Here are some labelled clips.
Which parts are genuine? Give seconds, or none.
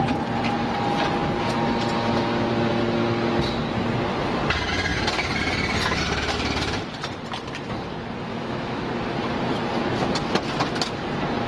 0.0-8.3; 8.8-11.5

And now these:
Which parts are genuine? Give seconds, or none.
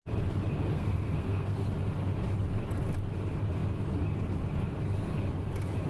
0.0-0.7; 1.7-5.9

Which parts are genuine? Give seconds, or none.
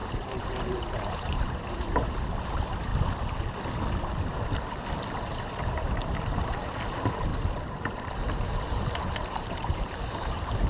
2.9-5.4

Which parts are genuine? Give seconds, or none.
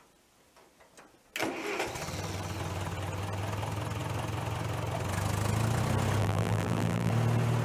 0.0-6.2; 7.1-7.6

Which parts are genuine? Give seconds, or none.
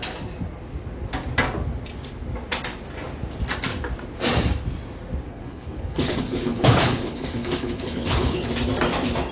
0.0-5.3; 8.5-9.3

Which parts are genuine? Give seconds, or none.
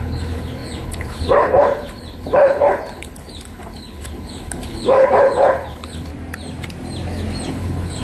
6.1-7.5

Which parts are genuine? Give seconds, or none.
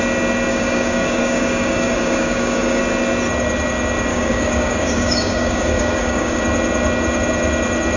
0.0-0.5; 2.8-4.1; 6.4-8.0